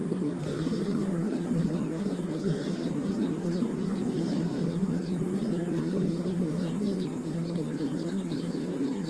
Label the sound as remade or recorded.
remade